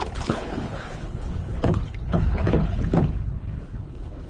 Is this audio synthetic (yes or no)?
yes